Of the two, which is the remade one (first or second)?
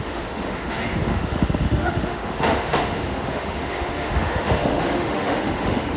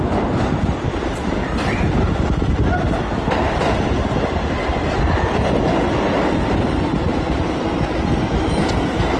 first